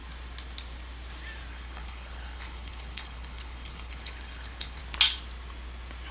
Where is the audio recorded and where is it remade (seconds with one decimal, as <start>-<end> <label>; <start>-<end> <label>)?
0.0-1.5 recorded; 1.5-4.8 remade; 4.8-6.1 recorded